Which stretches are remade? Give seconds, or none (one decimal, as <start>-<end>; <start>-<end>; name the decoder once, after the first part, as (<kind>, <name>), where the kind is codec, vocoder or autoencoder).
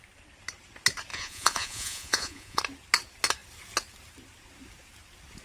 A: 1.1-2.6 (vocoder, Vocos)